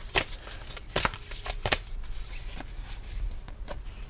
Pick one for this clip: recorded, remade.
recorded